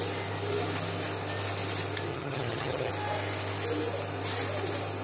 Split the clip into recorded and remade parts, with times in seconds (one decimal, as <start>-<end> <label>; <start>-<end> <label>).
0.0-2.1 recorded; 2.1-2.9 remade; 2.9-5.0 recorded